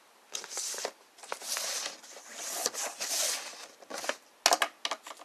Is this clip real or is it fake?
real